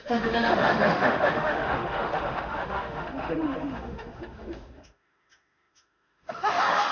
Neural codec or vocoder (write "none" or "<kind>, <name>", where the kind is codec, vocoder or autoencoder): autoencoder, DAC-VAE